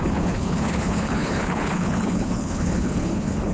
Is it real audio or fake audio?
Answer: fake